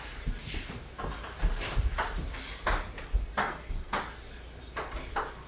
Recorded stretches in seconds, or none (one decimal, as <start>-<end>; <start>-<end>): 0.0-3.4; 3.9-5.5